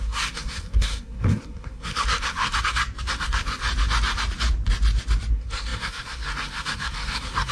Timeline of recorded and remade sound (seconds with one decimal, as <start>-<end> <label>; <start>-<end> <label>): 0.0-2.5 remade; 2.5-3.1 recorded; 3.1-3.6 remade; 3.6-5.3 recorded; 5.3-7.5 remade